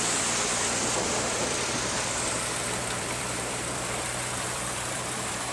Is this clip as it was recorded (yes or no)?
no